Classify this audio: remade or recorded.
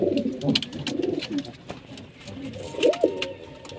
recorded